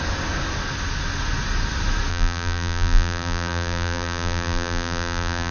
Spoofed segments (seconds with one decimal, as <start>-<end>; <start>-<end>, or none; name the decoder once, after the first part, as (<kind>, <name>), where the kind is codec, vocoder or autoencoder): 2.1-5.5 (vocoder, BigVGAN v2)